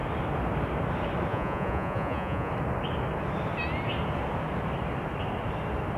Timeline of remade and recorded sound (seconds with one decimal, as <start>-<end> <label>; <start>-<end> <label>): 0.0-1.3 recorded; 1.3-2.5 remade; 2.5-6.0 recorded